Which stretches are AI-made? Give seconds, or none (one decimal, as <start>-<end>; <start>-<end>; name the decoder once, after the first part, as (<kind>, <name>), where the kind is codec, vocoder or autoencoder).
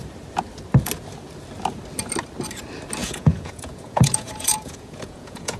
3.0-5.6 (vocoder, Vocos)